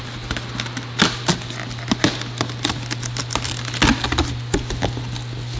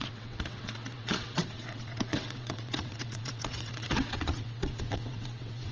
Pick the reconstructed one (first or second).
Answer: second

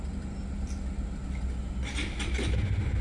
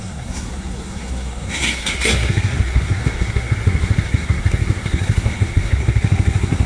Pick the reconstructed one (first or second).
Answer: second